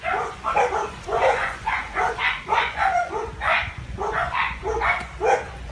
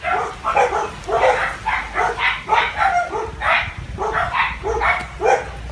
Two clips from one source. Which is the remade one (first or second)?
first